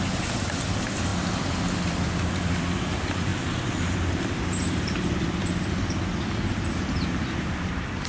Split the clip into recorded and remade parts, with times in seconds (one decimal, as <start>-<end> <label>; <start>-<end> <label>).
0.0-8.1 remade